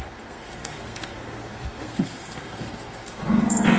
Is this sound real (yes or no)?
no